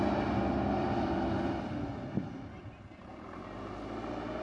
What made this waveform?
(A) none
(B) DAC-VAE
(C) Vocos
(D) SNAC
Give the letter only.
A